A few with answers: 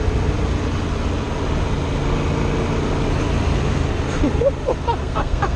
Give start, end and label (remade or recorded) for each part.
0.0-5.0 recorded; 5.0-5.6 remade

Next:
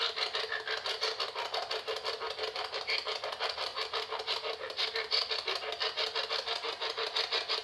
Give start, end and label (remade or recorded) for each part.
0.0-7.6 recorded